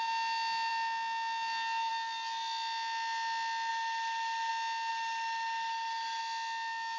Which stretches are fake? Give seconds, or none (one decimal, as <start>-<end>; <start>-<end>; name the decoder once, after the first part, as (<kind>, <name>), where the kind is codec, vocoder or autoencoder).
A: 3.7-4.5 (autoencoder, DAC-VAE); 4.9-6.2